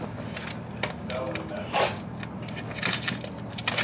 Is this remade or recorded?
recorded